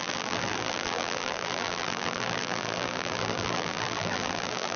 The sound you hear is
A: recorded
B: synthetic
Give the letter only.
B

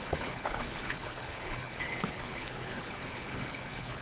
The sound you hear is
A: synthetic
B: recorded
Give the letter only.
A